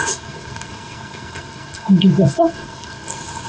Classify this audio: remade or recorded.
remade